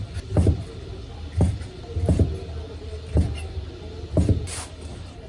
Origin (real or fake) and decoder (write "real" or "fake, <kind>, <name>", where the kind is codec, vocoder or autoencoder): real